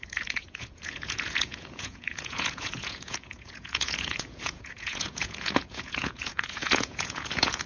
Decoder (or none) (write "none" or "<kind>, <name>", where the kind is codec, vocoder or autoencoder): vocoder, Vocos